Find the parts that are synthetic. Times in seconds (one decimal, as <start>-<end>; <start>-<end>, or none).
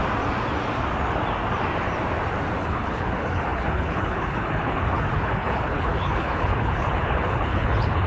2.6-8.1